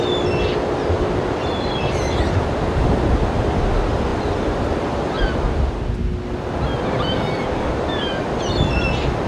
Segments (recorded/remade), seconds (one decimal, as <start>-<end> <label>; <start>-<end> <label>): 0.0-9.3 recorded